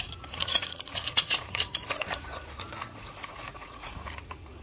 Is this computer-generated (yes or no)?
yes